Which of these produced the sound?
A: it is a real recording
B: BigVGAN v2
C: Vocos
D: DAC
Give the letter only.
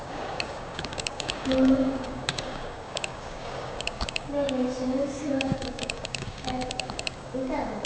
D